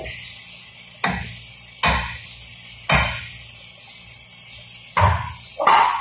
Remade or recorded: recorded